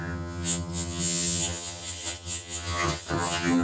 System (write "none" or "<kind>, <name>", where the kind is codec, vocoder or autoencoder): vocoder, HiFi-GAN